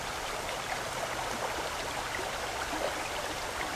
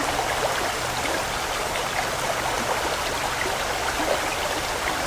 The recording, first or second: second